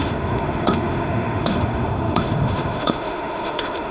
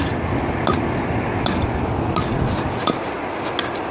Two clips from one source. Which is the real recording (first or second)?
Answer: second